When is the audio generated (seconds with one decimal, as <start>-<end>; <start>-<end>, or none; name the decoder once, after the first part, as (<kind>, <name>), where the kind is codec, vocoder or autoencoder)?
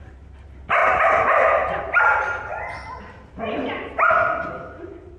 2.5-4.1 (vocoder, BigVGAN v2)